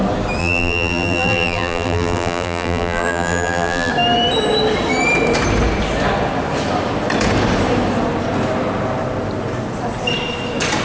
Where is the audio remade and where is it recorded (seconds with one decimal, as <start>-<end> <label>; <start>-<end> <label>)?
0.0-0.4 recorded; 0.4-3.9 remade; 3.9-10.8 recorded